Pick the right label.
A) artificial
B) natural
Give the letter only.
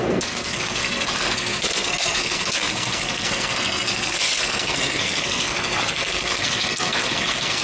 A